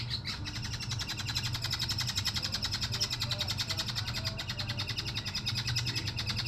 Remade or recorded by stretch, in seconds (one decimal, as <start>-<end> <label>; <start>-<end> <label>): 0.0-6.5 recorded